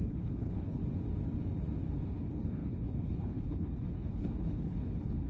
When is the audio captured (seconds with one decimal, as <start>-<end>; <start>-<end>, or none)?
0.8-2.1